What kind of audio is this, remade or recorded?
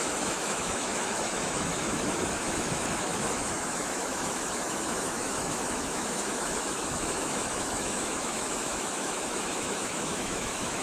remade